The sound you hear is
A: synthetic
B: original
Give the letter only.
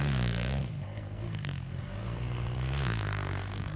A